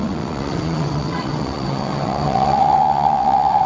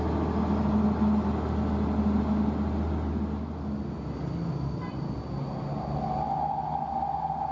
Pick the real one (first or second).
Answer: second